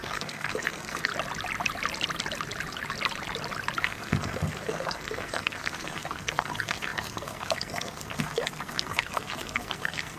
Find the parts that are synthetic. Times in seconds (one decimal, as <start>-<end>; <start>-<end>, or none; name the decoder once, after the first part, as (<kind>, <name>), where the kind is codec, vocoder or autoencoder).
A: 0.0-1.1 (codec, SNAC); 3.8-10.2